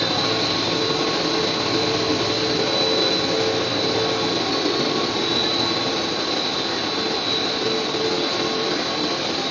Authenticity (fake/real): real